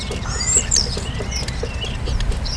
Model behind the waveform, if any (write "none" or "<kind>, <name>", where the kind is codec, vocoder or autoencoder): none